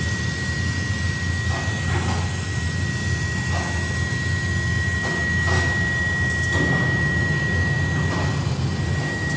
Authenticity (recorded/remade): recorded